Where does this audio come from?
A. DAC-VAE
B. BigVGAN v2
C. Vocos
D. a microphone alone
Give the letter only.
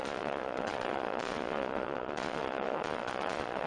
C